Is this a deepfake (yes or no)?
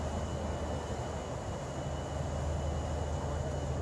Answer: no